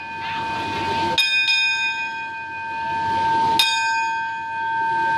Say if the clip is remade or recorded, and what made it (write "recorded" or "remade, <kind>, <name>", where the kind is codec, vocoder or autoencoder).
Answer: recorded